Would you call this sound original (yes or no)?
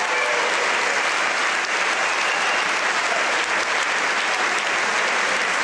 yes